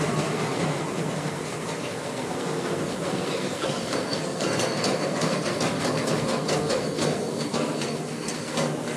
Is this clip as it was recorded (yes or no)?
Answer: no